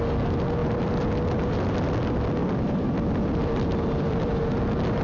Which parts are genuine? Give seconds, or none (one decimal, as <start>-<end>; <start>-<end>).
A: 0.0-0.6; 1.1-2.4; 4.4-5.0